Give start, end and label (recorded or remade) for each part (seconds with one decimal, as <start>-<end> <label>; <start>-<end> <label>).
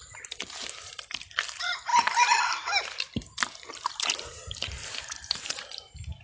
0.0-6.2 remade